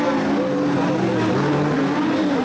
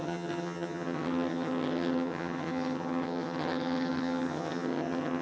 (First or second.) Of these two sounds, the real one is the first